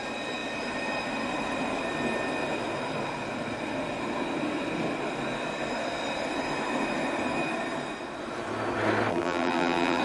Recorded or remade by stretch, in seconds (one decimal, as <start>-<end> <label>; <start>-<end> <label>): 0.0-9.1 recorded; 9.1-10.0 remade